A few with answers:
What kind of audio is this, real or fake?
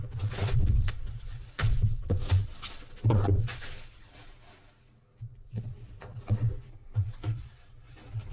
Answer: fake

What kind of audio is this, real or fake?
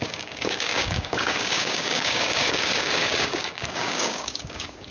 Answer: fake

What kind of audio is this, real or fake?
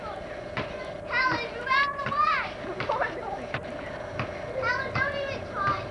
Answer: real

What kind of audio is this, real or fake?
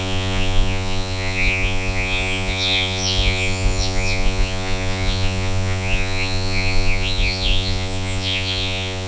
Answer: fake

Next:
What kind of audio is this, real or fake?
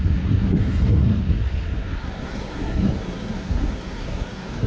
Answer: fake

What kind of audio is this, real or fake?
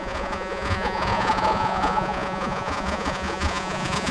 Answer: fake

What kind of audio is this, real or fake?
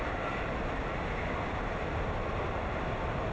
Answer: real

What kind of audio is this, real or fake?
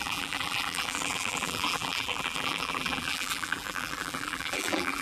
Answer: fake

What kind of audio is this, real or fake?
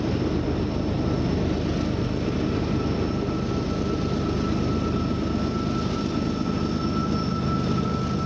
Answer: real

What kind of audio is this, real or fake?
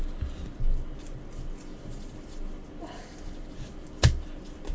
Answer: real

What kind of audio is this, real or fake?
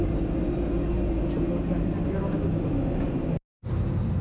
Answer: real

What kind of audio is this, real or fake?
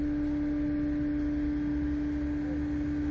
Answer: real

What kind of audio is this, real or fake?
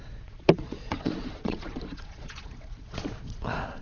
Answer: fake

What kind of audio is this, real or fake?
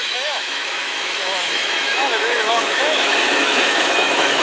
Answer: fake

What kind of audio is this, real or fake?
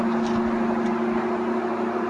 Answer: real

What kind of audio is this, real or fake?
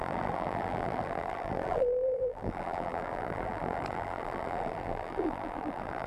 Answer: fake